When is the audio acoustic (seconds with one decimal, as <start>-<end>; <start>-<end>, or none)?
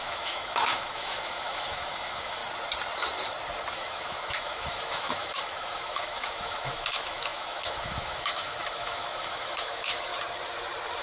2.4-3.7; 10.1-11.0